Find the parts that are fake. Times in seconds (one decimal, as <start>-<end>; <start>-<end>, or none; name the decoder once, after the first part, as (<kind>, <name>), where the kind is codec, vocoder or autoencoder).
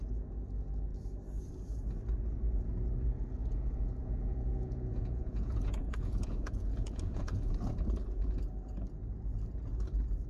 3.4-7.5 (vocoder, Vocos)